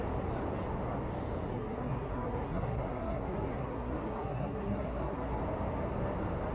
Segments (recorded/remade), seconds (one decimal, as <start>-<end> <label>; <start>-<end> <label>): 0.0-1.5 recorded; 1.5-5.4 remade; 5.4-6.5 recorded